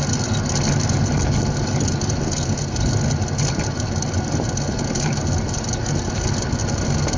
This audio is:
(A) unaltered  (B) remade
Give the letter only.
A